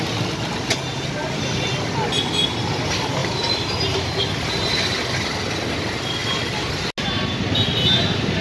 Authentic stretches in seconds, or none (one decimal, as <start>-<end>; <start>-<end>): 0.0-3.2; 4.1-6.2; 6.7-8.4